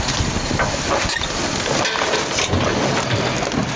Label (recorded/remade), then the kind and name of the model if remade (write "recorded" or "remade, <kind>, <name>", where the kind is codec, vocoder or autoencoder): recorded